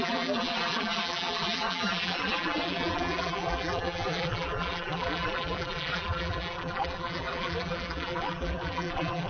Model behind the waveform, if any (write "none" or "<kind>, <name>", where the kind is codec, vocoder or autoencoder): vocoder, BigVGAN v2